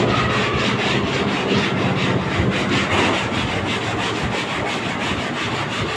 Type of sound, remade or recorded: recorded